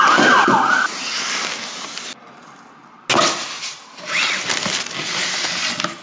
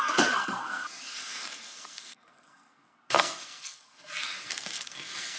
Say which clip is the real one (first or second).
first